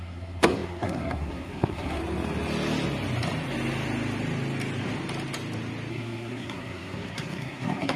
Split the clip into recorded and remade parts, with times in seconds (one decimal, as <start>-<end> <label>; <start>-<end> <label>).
0.0-2.0 remade; 2.0-5.9 recorded; 5.9-8.0 remade